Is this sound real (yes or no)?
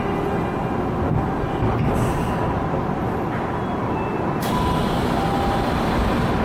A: yes